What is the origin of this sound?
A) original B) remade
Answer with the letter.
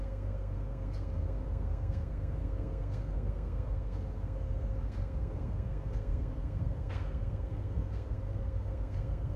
B